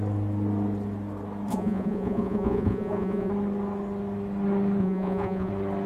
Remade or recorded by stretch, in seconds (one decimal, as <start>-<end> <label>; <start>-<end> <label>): 0.0-1.5 recorded; 1.5-3.3 remade; 3.3-4.8 recorded; 4.8-5.5 remade; 5.5-5.9 recorded